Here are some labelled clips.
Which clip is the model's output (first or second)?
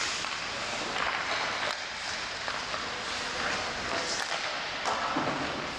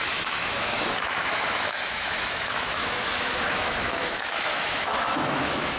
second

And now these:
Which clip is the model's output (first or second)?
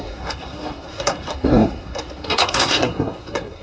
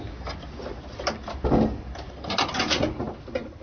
first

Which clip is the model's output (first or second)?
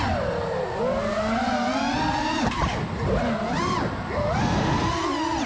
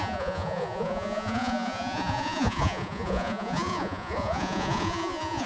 second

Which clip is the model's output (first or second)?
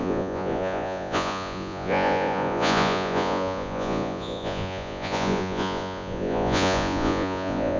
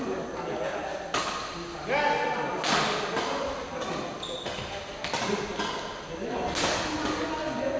first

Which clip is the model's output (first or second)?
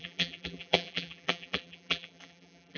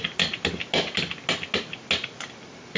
first